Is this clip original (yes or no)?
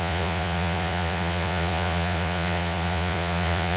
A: no